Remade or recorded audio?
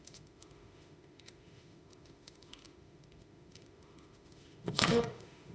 remade